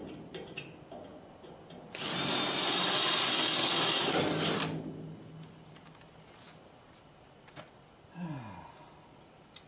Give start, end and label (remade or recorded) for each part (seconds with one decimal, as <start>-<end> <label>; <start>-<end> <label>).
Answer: 0.0-9.7 recorded